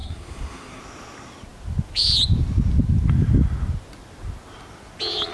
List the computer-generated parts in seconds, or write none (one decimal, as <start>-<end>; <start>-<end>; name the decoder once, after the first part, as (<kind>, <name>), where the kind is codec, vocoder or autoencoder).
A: 0.0-0.8 (codec, SNAC)